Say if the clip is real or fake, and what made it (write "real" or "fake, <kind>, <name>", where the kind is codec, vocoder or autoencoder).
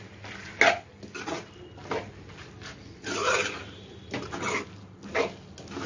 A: real